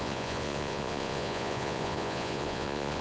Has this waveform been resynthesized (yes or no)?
yes